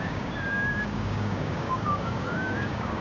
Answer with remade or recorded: remade